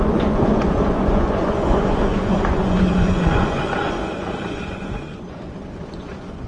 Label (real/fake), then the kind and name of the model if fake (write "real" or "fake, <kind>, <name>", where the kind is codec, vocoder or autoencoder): fake, vocoder, Vocos